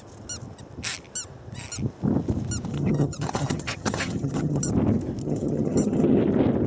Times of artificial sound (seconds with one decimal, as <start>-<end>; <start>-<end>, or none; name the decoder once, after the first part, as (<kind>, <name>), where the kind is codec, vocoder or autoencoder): 2.7-4.7 (vocoder, HiFi-GAN); 5.2-6.2